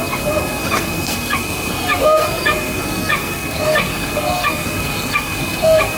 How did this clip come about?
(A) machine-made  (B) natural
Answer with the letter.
A